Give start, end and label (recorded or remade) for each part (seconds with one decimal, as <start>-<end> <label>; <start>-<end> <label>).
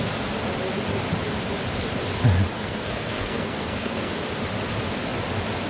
0.0-2.5 recorded; 2.5-4.1 remade; 4.1-5.7 recorded